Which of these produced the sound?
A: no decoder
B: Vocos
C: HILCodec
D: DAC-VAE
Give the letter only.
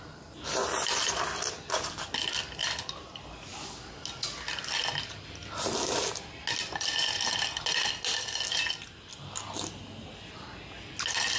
A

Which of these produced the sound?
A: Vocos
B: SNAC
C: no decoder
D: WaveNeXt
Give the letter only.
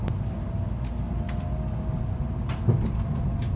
C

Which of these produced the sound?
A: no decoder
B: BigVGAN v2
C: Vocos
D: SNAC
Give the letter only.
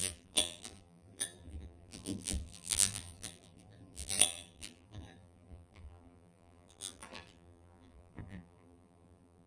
B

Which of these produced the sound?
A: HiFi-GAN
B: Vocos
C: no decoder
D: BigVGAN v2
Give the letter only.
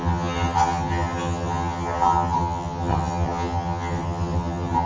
A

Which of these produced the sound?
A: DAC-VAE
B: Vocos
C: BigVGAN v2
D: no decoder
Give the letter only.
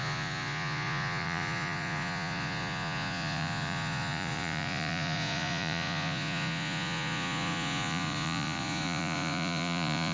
B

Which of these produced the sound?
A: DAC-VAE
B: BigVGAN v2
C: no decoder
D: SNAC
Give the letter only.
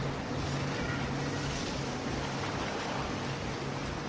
C